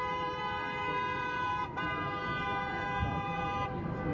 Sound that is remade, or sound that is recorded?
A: remade